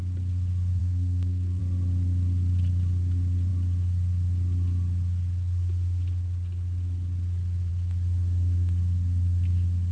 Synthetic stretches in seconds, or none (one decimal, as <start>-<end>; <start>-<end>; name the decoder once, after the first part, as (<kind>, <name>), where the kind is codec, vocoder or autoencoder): 0.8-1.6 (codec, SNAC)